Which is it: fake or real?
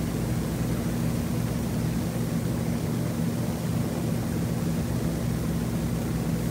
real